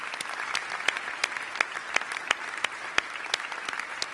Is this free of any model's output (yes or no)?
yes